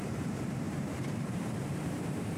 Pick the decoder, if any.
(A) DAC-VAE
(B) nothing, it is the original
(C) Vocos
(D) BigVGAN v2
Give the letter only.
D